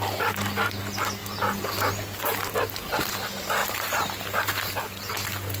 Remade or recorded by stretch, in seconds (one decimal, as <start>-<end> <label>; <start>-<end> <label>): 0.0-3.6 recorded; 3.6-5.1 remade; 5.1-5.6 recorded